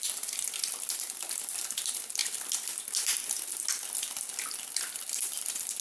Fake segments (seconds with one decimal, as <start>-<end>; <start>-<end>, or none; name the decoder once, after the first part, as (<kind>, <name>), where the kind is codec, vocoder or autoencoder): none

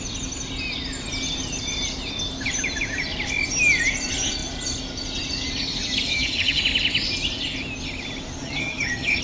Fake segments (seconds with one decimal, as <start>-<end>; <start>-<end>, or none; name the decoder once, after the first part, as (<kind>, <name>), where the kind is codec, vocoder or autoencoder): 6.1-6.6 (vocoder, HiFi-GAN); 8.4-9.2